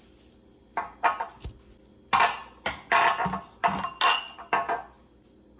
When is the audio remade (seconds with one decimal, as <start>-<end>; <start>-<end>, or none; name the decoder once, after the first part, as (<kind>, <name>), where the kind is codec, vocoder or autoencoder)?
none